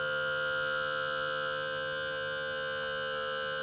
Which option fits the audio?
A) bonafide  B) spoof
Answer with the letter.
A